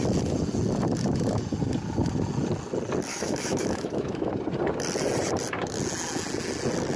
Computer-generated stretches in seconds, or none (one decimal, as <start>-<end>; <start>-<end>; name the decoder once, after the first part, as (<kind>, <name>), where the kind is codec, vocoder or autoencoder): 3.1-4.3 (autoencoder, DAC-VAE)